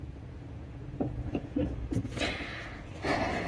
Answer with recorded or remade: remade